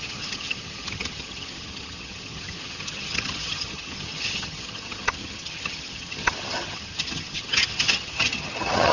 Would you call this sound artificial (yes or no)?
yes